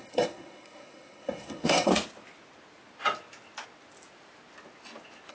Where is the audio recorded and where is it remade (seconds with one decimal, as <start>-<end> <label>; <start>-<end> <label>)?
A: 0.0-1.9 remade; 1.9-5.3 recorded